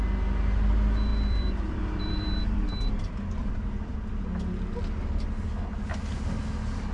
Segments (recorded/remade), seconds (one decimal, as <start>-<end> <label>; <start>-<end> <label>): 0.0-1.1 recorded; 1.1-4.2 remade; 4.2-6.9 recorded